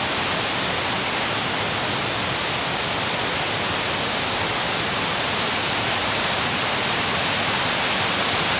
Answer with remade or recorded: recorded